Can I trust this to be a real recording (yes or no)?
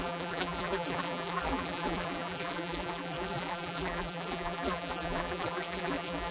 no